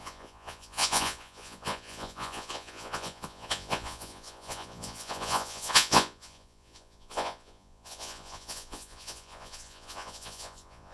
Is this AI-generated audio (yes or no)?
yes